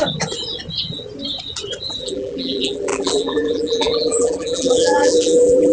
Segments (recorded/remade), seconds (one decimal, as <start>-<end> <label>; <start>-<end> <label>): 0.0-2.0 recorded; 2.0-5.7 remade